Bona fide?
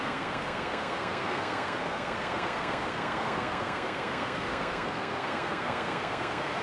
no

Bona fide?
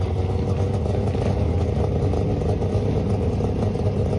yes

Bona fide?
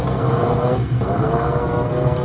no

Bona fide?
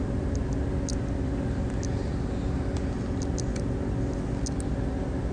yes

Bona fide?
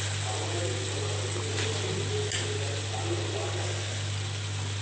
yes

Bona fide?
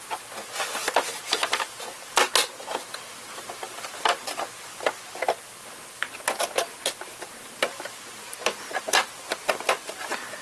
yes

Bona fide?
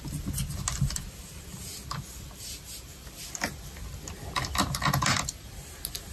yes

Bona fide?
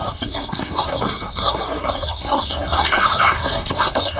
no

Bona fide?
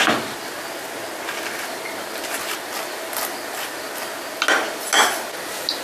yes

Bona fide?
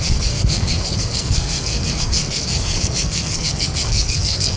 no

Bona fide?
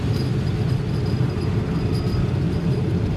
yes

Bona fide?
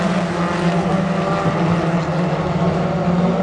yes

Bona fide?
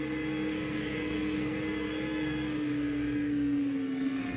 no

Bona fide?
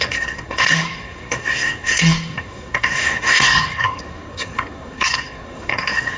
no